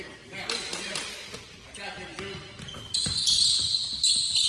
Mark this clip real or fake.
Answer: real